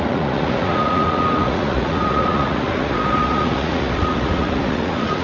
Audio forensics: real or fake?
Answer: fake